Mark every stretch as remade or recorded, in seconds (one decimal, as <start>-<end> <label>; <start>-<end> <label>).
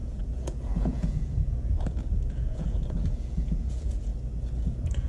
0.0-4.1 remade; 4.1-4.6 recorded; 4.6-5.1 remade